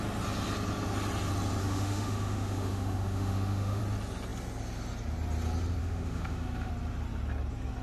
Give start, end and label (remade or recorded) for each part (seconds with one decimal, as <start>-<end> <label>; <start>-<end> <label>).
0.0-1.6 recorded; 1.6-3.8 remade; 3.8-5.8 recorded; 5.8-6.7 remade; 6.7-7.8 recorded